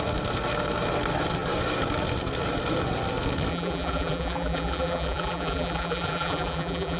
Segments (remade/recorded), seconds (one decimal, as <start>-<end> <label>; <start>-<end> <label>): 0.0-3.5 recorded; 3.5-7.0 remade